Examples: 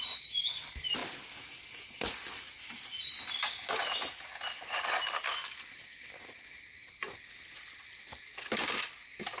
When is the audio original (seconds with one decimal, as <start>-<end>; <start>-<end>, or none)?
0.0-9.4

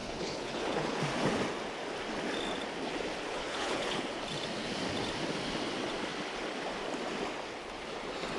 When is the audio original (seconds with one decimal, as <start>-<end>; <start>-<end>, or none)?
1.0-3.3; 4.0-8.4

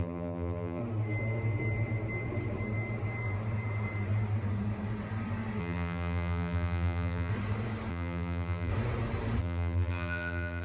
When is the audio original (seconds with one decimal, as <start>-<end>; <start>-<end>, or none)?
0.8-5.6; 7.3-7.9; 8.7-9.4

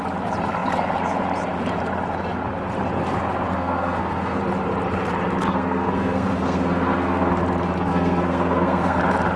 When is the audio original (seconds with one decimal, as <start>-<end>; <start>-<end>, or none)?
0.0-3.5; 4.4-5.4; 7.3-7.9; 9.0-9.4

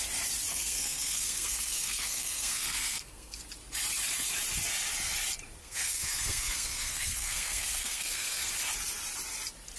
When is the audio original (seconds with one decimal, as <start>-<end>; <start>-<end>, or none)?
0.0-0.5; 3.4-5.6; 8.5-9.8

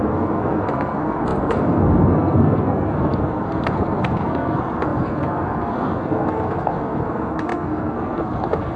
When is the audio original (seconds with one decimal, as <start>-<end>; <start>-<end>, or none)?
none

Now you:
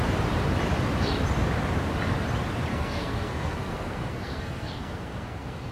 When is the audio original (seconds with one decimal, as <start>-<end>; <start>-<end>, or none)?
0.0-2.7